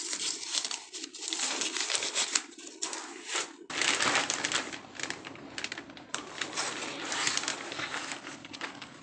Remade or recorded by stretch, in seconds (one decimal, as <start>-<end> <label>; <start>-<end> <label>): 0.0-7.5 recorded; 7.5-9.0 remade